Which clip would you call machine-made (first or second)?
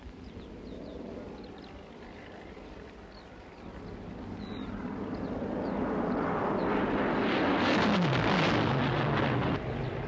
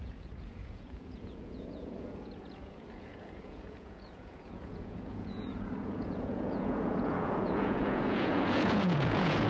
second